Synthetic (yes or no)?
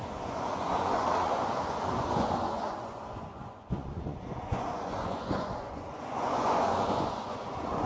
yes